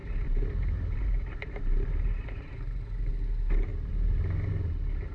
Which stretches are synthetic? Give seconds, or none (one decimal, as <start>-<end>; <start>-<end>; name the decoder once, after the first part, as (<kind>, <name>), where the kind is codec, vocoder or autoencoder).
0.0-3.1 (vocoder, BigVGAN v2); 3.7-4.5